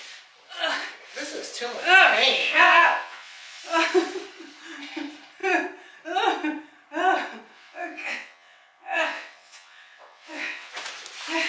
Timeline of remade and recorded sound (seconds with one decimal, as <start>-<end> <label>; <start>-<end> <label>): 0.0-2.4 recorded; 2.4-3.6 remade; 3.6-7.5 recorded; 7.5-10.7 remade; 10.7-11.5 recorded